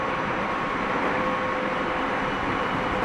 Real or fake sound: real